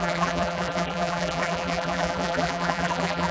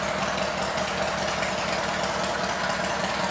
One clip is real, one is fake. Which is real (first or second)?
second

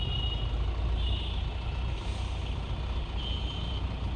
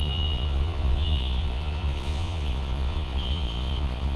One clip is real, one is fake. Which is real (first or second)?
first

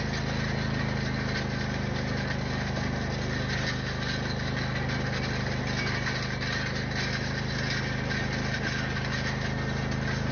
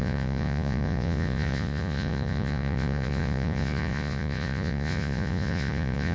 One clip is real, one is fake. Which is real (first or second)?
first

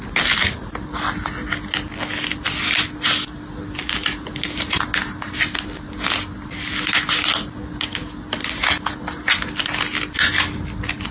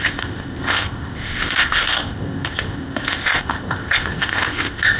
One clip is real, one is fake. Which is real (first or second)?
first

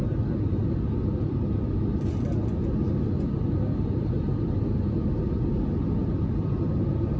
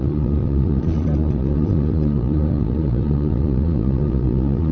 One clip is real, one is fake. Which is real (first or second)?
first